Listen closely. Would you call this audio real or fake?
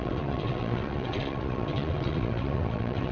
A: fake